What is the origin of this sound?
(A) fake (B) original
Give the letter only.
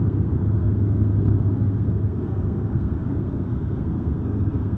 A